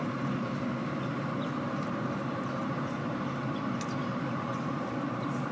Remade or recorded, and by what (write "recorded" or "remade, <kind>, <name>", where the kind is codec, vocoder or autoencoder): remade, vocoder, BigVGAN v2